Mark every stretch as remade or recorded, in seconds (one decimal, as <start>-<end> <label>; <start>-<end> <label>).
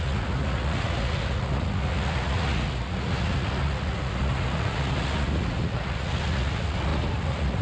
0.0-7.6 remade